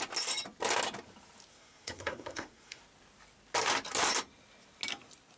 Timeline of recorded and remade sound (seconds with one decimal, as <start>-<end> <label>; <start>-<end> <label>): 0.0-1.5 recorded; 1.5-2.8 remade; 2.8-5.4 recorded